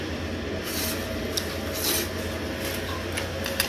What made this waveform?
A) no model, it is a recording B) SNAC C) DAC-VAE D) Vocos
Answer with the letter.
A